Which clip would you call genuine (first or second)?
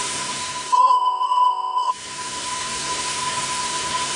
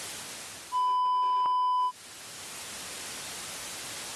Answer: second